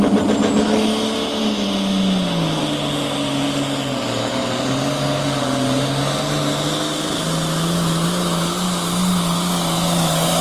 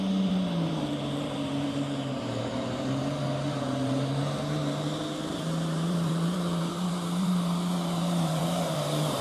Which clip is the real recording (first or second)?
first